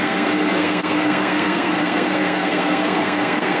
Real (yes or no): no